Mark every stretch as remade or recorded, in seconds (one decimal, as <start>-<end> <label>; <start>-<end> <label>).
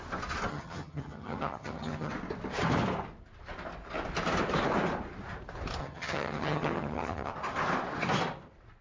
0.0-0.5 recorded; 0.5-2.1 remade; 2.1-5.8 recorded; 5.8-7.3 remade; 7.3-8.8 recorded